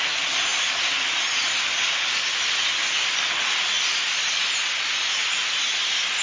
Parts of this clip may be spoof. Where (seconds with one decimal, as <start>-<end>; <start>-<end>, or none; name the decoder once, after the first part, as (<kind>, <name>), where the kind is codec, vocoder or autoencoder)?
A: none

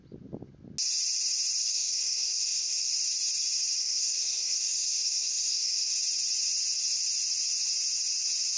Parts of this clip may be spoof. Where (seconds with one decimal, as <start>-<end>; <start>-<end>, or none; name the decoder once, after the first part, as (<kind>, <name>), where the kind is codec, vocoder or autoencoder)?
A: 1.6-2.9 (codec, SNAC); 3.8-5.9

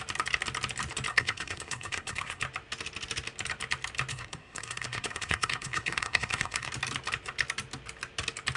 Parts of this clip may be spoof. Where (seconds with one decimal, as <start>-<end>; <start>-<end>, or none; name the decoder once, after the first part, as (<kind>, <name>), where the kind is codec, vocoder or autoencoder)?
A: 1.1-2.4 (codec, SNAC); 4.1-6.7

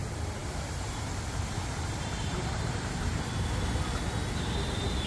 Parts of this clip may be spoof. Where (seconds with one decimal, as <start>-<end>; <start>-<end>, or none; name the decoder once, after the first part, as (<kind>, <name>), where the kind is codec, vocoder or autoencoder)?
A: 0.4-3.5 (vocoder, BigVGAN v2)